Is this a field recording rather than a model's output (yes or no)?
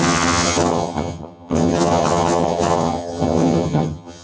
no